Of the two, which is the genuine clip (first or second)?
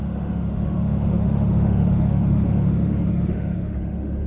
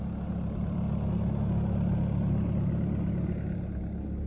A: second